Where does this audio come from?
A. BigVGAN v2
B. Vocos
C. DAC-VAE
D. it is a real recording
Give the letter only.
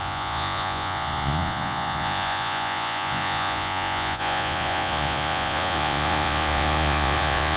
B